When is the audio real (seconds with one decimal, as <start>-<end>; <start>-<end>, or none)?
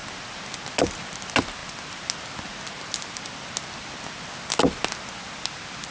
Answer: 0.0-5.9